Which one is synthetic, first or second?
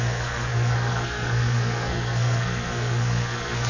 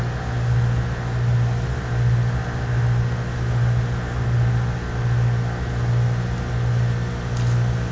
first